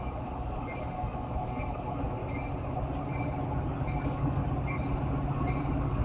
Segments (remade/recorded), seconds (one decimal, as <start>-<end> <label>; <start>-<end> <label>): 0.0-2.2 remade; 2.2-4.0 recorded; 4.0-4.4 remade; 4.4-5.6 recorded; 5.6-6.0 remade